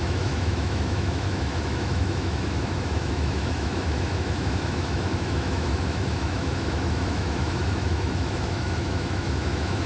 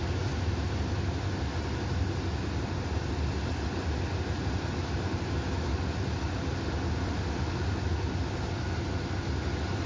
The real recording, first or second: second